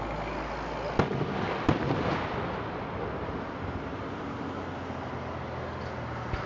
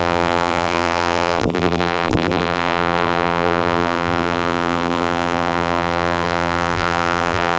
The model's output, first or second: second